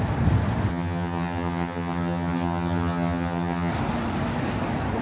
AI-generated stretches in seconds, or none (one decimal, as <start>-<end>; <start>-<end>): 0.7-3.7